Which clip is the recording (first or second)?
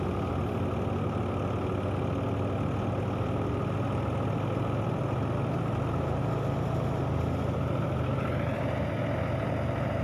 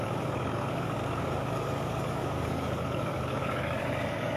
first